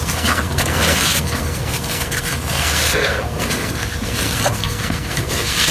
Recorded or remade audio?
remade